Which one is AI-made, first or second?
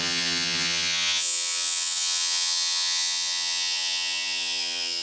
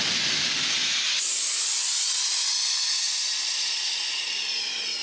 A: first